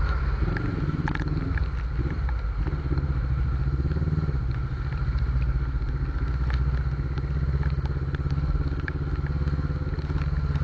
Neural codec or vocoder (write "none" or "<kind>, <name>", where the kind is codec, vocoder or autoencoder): none